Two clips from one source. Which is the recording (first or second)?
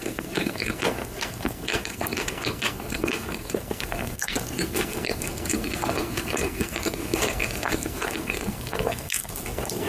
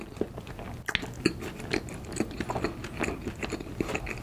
second